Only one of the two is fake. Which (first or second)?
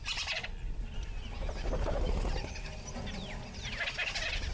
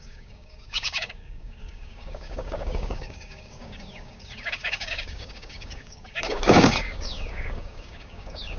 second